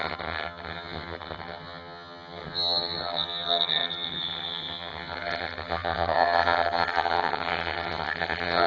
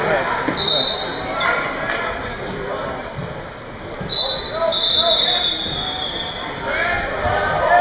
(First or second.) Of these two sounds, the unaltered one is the second